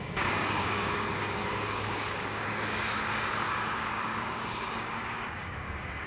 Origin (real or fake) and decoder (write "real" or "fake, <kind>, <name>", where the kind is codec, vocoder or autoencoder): fake, codec, DAC